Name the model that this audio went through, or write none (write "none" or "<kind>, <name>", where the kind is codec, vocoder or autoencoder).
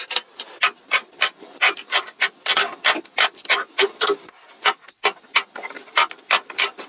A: none